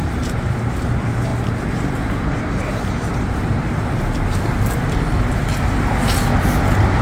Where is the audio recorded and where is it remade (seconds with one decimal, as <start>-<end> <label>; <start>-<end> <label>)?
0.0-1.3 remade; 1.3-2.4 recorded; 2.4-5.4 remade; 5.4-7.0 recorded